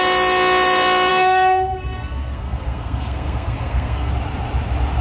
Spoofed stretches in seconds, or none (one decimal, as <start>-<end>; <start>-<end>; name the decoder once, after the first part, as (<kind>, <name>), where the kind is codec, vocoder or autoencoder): 1.1-4.1 (codec, SNAC)